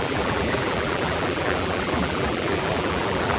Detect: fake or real fake